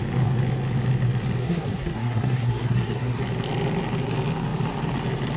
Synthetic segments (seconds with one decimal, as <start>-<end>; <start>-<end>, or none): 1.4-3.2